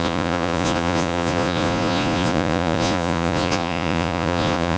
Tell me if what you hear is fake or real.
fake